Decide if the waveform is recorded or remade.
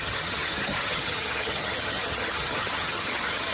remade